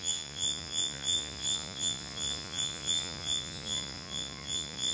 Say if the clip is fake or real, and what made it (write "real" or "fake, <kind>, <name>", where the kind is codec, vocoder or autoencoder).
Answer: fake, vocoder, Vocos